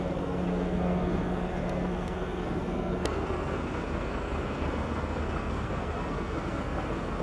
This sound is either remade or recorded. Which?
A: remade